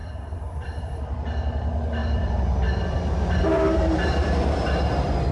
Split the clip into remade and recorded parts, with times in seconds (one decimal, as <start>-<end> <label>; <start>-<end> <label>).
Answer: 0.0-0.8 remade; 0.8-2.0 recorded; 2.0-4.4 remade; 4.4-5.3 recorded